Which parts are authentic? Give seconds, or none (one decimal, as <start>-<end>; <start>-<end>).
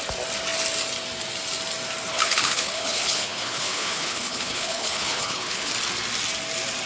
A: 0.0-2.1; 5.7-6.9